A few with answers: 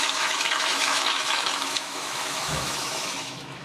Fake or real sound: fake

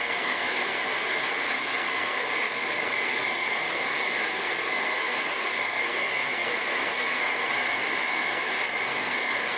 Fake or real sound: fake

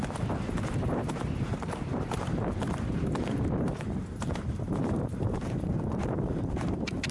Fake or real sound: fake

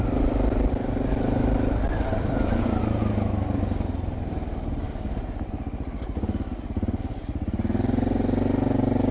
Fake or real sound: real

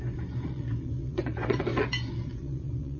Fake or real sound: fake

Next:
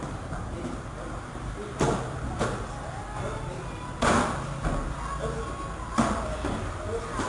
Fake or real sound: real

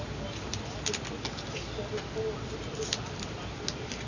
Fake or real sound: real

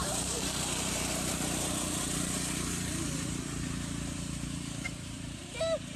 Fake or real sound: fake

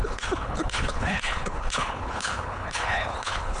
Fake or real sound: fake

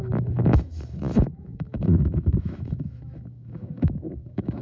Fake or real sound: fake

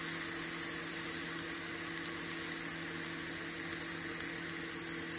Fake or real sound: real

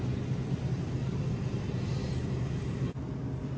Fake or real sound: real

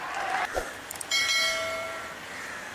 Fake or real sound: fake